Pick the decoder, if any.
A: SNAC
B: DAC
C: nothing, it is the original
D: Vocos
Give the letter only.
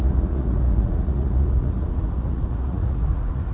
D